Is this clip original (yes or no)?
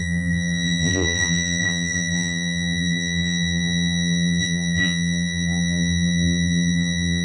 no